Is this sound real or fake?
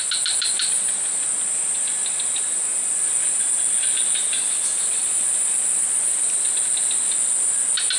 real